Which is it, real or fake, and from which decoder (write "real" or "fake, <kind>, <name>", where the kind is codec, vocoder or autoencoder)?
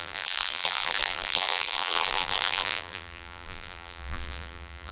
fake, vocoder, BigVGAN v2